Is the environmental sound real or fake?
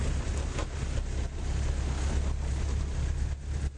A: real